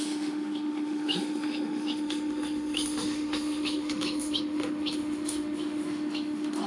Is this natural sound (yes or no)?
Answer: no